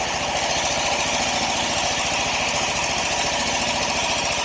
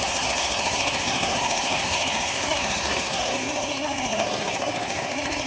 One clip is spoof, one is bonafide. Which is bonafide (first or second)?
first